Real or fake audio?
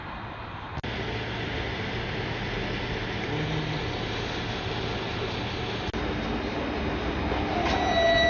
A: real